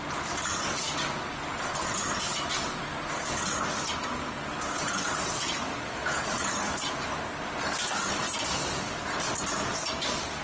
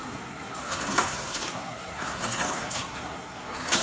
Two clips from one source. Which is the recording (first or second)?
first